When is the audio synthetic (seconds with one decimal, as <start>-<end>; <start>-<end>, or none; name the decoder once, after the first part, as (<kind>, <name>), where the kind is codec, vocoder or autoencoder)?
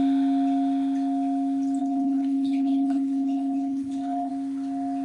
1.8-4.3 (codec, HILCodec)